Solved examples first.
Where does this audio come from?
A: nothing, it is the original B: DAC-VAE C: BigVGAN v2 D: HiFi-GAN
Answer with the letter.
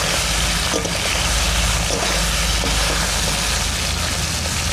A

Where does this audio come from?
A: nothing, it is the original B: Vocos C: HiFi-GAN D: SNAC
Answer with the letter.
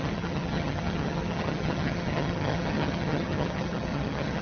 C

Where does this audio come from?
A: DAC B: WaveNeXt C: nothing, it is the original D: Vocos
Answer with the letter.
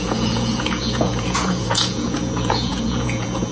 D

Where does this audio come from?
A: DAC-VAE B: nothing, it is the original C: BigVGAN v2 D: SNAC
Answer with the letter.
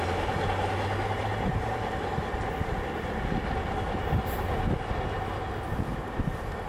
B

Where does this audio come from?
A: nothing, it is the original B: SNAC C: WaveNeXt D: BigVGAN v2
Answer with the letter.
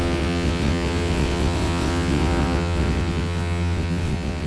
C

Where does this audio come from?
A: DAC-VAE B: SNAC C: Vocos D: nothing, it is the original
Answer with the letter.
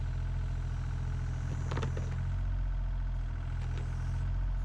D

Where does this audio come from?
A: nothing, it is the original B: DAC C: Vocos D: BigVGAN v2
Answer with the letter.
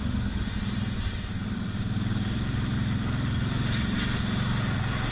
A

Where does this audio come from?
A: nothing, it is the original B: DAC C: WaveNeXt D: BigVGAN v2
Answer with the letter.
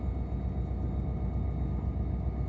A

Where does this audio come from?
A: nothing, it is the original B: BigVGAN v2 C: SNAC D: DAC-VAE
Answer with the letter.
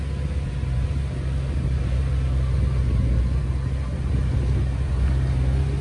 A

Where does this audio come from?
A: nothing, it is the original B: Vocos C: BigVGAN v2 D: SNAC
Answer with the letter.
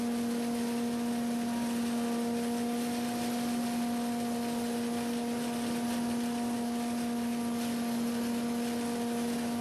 A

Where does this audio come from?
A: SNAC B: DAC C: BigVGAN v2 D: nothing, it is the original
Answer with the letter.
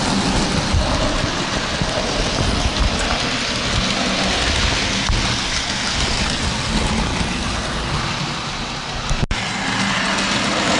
D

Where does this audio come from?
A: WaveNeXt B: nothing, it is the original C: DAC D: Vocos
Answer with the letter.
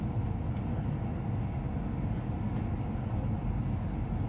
B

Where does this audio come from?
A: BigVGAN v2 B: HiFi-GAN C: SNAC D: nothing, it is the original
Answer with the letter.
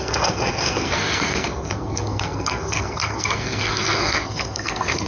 C